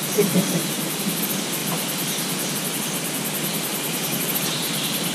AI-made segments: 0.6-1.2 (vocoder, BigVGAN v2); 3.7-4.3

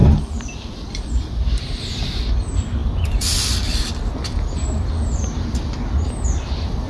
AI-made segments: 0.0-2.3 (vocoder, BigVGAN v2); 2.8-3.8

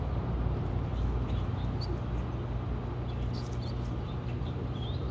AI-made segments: 0.0-0.9 (vocoder, BigVGAN v2); 4.0-5.1

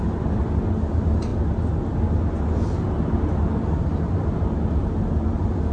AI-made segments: 0.0-0.7 (vocoder, BigVGAN v2)

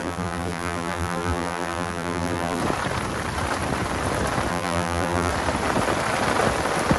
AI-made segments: 0.0-2.6 (vocoder, BigVGAN v2); 4.5-5.3

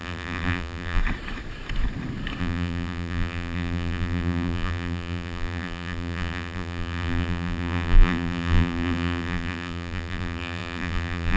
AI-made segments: 0.0-1.0 (vocoder, BigVGAN v2); 2.4-11.4

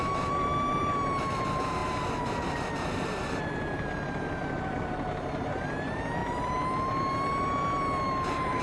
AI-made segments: 0.0-8.6 (vocoder, BigVGAN v2)